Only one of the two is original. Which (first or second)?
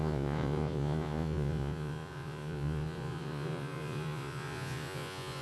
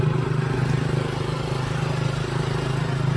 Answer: second